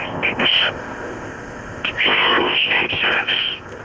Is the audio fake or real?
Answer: fake